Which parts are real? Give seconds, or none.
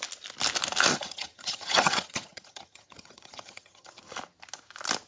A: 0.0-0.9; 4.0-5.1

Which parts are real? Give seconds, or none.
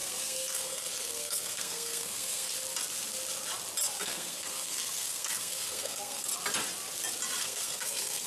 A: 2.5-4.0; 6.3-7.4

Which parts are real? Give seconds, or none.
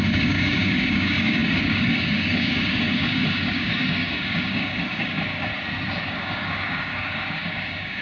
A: 5.5-6.0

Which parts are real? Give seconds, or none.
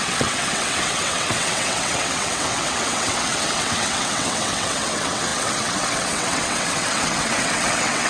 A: none